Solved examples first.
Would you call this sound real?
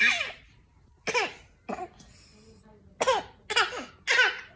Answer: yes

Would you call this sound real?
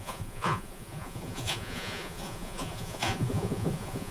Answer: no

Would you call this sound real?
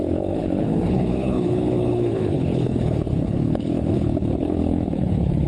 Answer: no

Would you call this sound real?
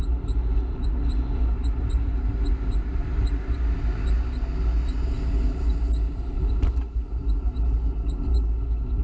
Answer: yes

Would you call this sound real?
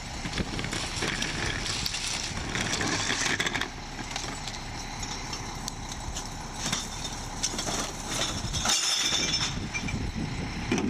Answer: yes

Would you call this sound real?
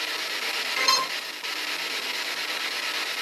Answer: yes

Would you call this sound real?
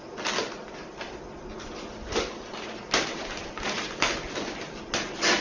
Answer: yes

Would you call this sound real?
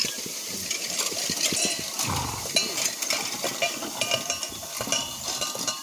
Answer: yes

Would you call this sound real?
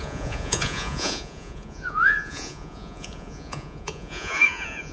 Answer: no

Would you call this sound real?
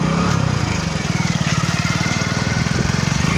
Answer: yes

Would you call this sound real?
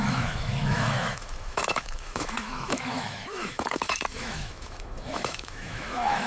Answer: no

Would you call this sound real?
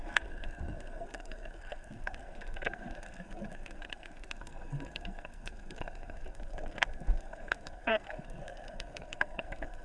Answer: no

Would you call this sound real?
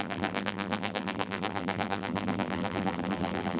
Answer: no